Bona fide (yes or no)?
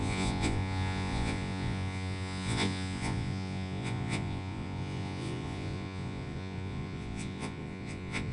no